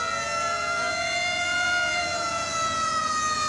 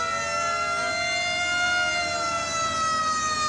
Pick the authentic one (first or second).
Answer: second